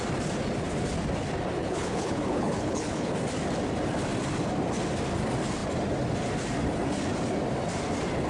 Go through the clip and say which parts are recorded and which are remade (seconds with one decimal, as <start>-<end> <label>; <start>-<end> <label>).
0.0-1.6 recorded; 1.6-3.1 remade; 3.1-8.3 recorded